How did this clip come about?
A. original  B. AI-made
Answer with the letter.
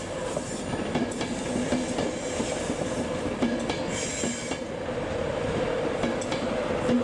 A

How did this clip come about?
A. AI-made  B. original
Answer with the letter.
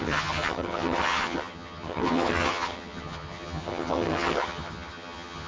A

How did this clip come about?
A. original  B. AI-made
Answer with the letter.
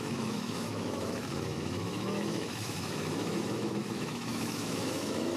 B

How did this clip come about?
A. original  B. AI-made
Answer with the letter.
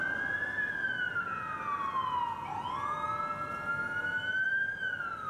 A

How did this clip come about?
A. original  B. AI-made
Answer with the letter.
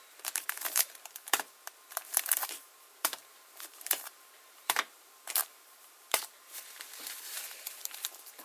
B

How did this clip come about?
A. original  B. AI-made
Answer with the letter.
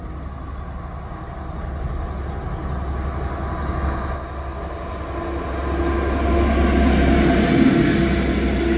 A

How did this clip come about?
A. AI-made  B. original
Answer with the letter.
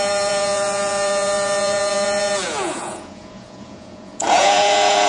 A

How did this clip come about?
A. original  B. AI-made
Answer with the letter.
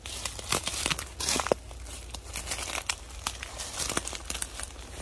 A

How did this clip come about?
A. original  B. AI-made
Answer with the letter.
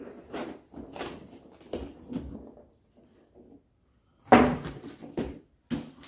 A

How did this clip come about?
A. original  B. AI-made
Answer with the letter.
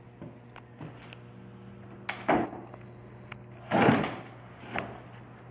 A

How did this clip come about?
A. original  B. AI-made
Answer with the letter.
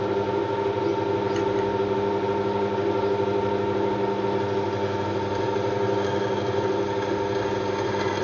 A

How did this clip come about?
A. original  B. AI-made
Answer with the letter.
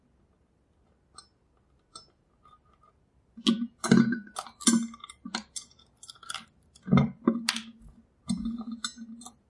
A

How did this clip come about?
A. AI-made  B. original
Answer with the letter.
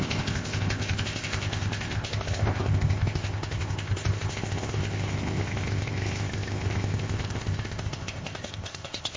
A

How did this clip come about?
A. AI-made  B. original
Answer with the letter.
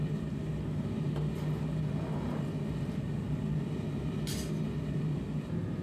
B